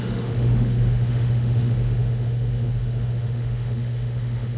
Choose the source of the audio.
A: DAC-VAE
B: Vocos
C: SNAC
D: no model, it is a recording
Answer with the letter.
A